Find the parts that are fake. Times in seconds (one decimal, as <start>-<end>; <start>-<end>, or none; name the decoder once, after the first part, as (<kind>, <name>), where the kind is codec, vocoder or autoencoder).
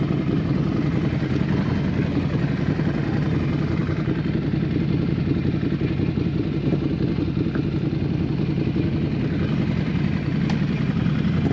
none